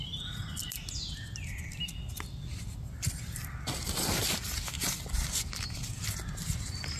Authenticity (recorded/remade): recorded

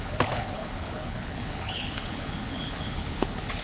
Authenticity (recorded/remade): remade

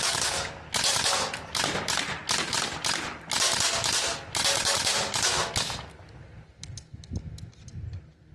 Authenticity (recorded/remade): recorded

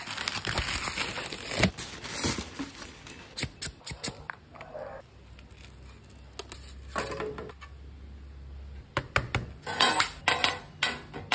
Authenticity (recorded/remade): recorded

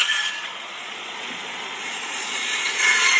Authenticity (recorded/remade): remade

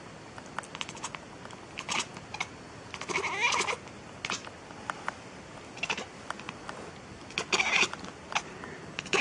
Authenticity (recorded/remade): recorded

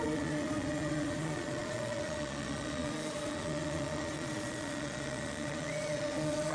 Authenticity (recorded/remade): remade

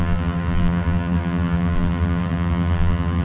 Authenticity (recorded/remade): remade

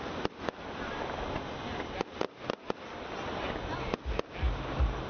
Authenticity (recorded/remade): recorded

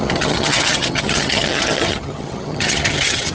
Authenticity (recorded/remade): remade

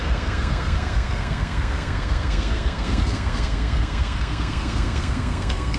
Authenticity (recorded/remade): remade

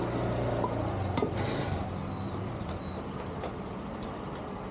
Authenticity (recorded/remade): recorded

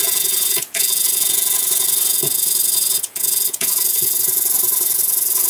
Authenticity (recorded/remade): remade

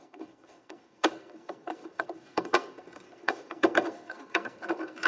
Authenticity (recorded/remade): remade